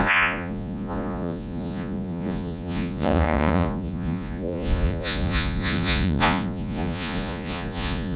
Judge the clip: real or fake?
fake